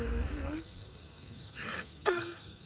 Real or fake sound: fake